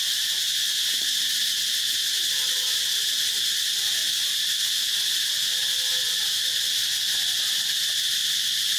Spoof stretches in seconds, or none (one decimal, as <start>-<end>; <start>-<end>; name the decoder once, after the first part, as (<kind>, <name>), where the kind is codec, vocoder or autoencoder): none